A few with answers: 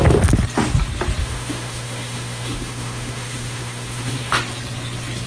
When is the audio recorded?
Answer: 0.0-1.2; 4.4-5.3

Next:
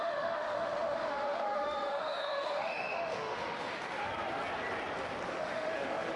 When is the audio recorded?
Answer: 4.1-5.3

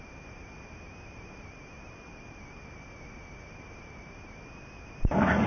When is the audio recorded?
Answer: 0.0-5.5

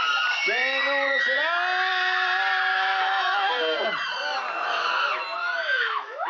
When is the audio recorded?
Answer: 0.0-2.7; 3.5-5.4

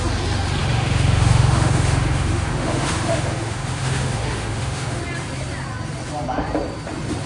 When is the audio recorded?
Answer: 0.0-0.6; 5.0-7.3

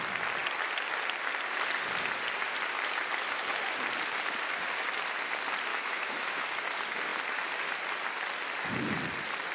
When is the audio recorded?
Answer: 0.0-5.7; 6.4-9.5

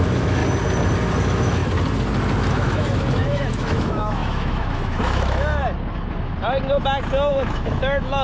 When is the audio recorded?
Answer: 0.4-1.2; 1.6-2.5; 5.6-7.3

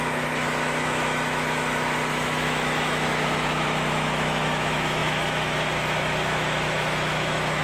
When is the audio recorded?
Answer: none